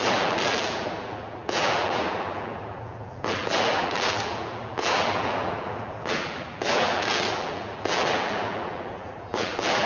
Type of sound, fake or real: fake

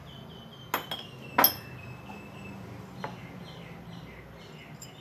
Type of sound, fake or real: real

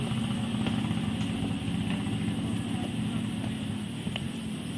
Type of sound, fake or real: real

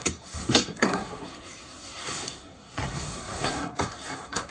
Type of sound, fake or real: fake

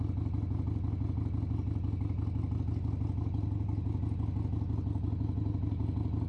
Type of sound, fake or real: real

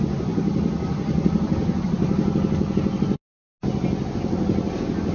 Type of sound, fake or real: real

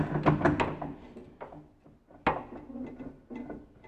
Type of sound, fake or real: real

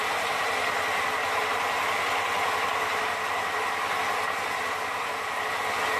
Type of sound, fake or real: real